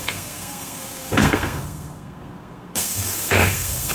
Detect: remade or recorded remade